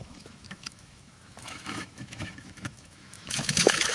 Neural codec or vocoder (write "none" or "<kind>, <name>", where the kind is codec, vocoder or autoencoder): autoencoder, DAC-VAE